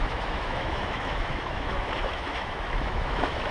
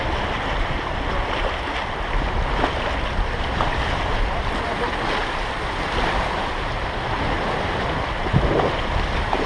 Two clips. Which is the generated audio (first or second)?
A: first